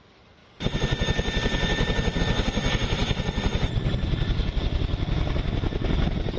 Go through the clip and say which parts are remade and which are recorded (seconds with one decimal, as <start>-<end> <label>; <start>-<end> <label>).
0.0-6.4 recorded